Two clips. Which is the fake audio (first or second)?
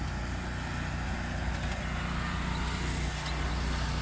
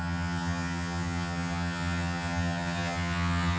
second